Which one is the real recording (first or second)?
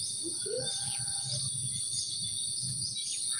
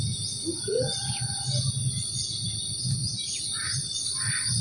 first